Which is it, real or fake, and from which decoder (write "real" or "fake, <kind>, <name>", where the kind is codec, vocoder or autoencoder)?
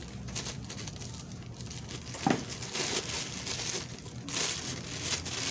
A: real